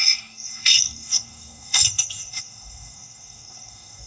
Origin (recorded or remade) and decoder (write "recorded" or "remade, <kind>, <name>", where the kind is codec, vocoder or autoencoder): remade, codec, DAC